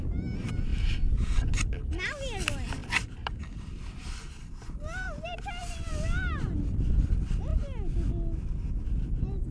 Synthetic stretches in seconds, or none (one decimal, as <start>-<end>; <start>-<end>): 2.8-4.5; 4.9-6.5